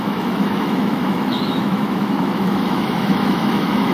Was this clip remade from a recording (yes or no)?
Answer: yes